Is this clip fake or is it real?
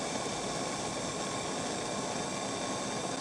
real